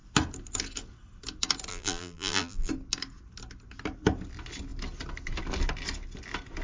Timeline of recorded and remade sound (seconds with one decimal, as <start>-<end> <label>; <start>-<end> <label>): 0.0-1.7 recorded; 1.7-2.7 remade; 2.7-6.6 recorded